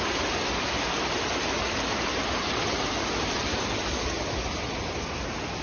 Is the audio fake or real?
real